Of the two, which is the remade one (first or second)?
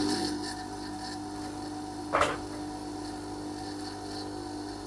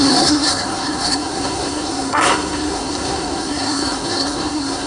second